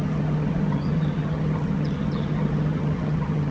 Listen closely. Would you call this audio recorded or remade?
remade